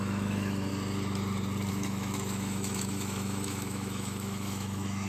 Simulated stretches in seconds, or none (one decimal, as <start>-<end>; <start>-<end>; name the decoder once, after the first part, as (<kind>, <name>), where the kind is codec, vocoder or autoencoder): 0.0-0.7 (autoencoder, DAC-VAE); 1.7-5.1